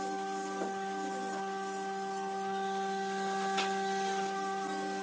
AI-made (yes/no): no